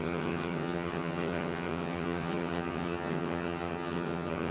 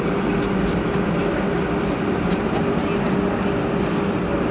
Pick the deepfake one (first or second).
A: first